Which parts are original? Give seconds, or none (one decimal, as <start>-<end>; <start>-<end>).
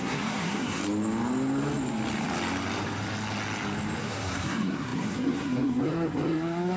0.8-4.0